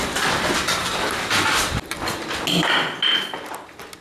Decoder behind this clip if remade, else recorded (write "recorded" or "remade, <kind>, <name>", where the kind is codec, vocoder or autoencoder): recorded